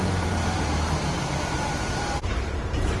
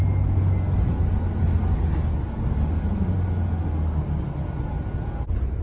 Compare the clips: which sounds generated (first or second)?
first